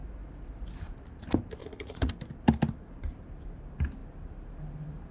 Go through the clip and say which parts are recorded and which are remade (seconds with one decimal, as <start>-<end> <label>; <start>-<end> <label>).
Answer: 0.0-1.6 recorded; 1.6-2.1 remade; 2.1-5.1 recorded